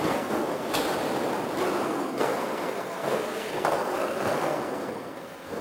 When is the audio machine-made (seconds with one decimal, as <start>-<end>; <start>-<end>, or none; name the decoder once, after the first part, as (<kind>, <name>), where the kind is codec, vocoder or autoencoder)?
0.0-0.8 (codec, SNAC); 1.8-5.6